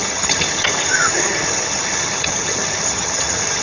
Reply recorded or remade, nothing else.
remade